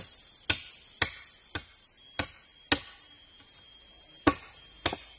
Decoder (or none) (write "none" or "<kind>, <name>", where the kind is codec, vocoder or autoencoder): none